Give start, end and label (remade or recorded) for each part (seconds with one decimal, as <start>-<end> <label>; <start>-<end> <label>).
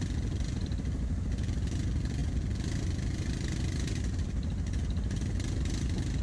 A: 0.0-6.2 recorded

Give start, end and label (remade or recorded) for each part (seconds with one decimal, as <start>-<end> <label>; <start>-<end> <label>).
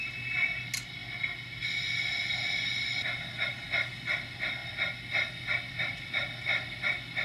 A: 0.0-7.2 recorded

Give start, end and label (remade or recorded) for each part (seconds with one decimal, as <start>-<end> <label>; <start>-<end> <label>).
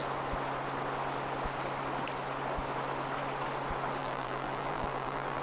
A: 0.0-4.0 recorded; 4.0-5.4 remade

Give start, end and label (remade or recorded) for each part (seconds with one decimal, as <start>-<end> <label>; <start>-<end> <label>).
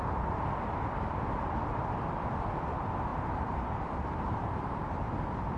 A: 0.0-3.1 recorded; 3.1-5.6 remade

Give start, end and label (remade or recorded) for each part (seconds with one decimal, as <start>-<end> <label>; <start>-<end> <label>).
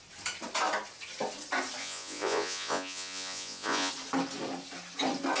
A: 0.0-1.8 recorded; 1.8-3.9 remade; 3.9-5.4 recorded